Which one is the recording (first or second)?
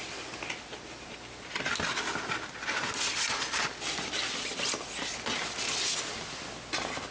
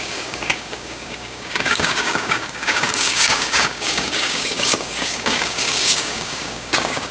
first